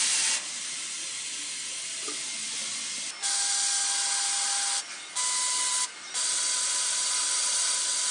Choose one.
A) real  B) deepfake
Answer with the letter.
A